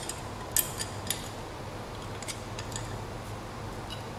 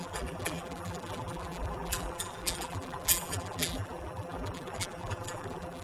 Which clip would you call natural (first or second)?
first